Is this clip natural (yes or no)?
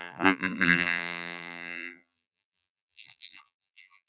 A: no